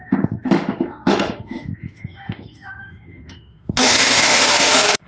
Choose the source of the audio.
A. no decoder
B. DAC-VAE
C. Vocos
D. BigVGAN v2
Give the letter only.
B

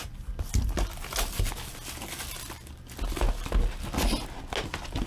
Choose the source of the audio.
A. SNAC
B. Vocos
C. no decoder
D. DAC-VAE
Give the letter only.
C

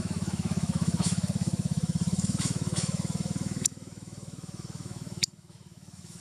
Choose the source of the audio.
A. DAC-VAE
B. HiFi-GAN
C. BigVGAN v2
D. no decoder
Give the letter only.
A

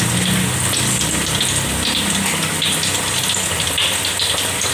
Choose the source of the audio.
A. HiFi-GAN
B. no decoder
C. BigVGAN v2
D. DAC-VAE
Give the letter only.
B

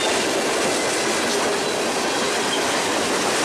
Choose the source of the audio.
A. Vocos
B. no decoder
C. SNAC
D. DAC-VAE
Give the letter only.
B